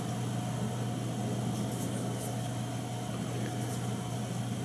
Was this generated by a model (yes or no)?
no